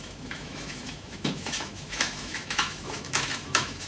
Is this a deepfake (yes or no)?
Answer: yes